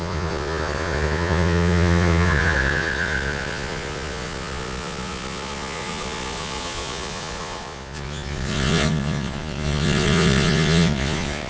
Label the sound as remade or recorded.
remade